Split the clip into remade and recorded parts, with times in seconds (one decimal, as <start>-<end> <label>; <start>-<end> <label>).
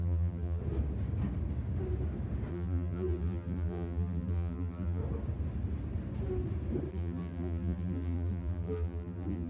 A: 0.0-0.6 remade; 0.6-2.5 recorded; 2.5-5.0 remade; 5.0-6.9 recorded; 6.9-9.5 remade